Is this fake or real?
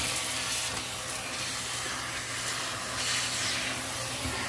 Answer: real